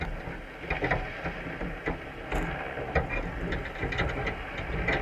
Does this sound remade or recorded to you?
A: recorded